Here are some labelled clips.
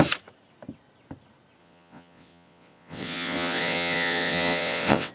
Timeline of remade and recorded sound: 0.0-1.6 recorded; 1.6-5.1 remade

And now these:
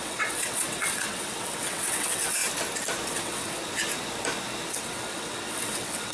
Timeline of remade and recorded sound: 0.0-2.4 remade; 2.4-3.1 recorded; 3.1-3.6 remade; 3.6-4.7 recorded; 4.7-6.1 remade